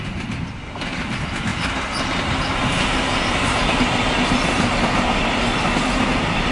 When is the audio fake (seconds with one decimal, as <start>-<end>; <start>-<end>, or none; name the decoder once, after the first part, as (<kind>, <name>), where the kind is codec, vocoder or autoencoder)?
none